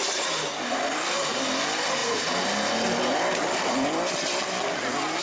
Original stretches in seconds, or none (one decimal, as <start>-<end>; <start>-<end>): 0.0-5.2